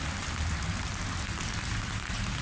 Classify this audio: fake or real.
real